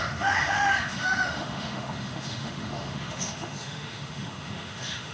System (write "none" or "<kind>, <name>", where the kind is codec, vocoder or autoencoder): autoencoder, DAC-VAE